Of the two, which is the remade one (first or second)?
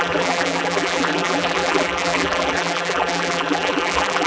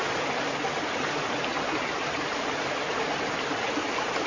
first